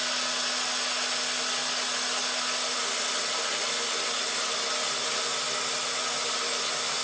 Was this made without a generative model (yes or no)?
yes